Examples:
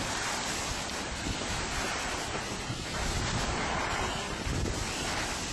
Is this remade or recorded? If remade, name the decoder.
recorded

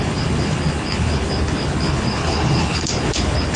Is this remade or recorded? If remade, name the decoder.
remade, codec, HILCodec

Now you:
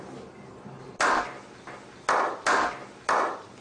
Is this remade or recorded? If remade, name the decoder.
recorded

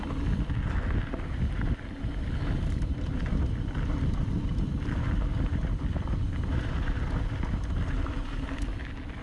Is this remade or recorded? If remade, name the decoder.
recorded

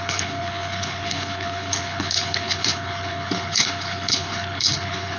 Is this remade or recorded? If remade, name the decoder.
remade, codec, HILCodec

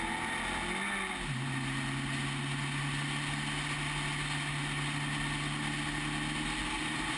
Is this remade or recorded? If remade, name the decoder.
recorded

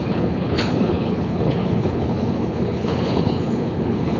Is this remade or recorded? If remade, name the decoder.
remade, codec, HILCodec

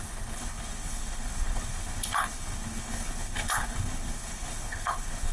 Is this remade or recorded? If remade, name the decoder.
remade, codec, HILCodec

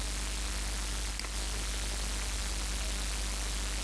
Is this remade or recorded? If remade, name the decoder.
recorded